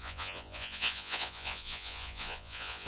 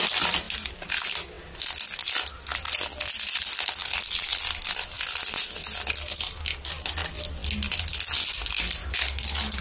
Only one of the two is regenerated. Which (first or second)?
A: first